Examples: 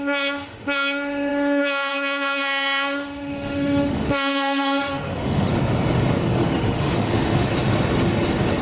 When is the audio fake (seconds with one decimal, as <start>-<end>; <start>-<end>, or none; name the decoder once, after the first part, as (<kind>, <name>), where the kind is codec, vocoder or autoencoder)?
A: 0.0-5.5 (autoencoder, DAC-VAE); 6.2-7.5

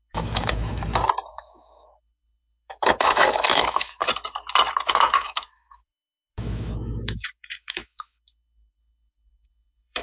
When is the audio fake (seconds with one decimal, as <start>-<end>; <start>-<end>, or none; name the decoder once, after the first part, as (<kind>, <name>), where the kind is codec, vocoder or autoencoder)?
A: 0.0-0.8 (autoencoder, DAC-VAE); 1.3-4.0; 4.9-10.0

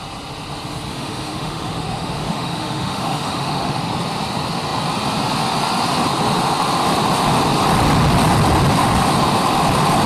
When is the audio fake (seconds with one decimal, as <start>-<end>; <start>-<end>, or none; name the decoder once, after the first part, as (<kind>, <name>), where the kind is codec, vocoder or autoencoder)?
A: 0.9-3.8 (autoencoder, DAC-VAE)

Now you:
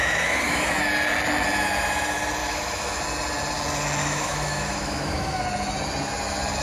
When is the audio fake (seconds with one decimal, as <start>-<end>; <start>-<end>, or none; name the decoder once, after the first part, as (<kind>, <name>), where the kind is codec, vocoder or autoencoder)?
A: 0.0-0.7 (autoencoder, DAC-VAE); 2.4-3.0; 4.0-5.4

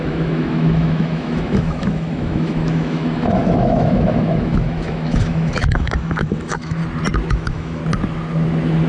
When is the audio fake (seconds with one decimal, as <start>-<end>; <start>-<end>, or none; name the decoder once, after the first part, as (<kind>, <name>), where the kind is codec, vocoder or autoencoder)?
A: 0.0-6.8 (autoencoder, DAC-VAE); 7.3-7.8

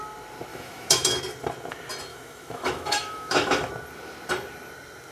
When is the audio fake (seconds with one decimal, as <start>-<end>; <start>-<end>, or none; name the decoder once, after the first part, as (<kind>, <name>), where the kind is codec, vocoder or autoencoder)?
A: 0.5-1.2 (autoencoder, DAC-VAE); 2.1-3.7

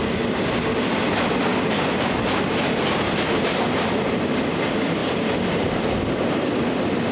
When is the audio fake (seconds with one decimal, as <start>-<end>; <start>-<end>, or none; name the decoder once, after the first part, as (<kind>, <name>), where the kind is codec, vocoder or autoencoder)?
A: none